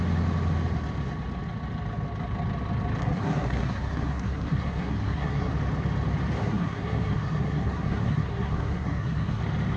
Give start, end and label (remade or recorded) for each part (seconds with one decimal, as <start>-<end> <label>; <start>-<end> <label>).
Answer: 0.0-3.0 recorded; 3.0-5.5 remade; 5.5-6.4 recorded; 6.4-9.4 remade; 9.4-9.8 recorded